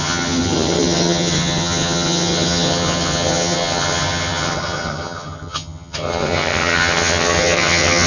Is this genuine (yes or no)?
no